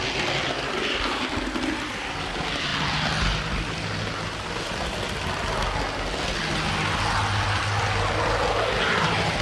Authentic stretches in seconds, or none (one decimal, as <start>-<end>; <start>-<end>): 0.0-9.4

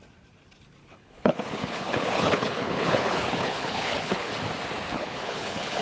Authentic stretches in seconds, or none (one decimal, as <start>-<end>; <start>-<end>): 0.0-0.8; 4.3-4.9

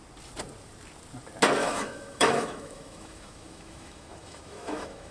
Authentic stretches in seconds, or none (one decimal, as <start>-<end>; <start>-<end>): 0.0-1.6

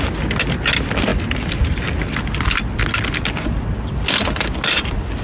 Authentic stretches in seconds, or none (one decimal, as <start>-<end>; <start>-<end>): 0.0-5.2

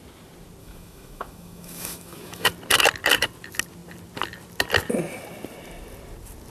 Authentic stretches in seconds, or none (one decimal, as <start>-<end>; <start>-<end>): 0.0-0.6; 2.5-6.5

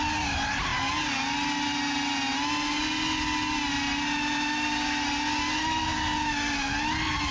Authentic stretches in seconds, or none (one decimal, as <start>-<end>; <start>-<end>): 0.0-7.3

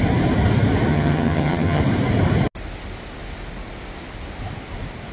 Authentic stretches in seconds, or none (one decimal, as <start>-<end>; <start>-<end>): 0.0-0.9; 1.8-5.1

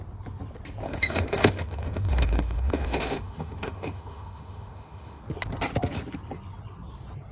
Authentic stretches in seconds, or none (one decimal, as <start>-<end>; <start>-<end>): 0.0-0.8; 5.2-7.3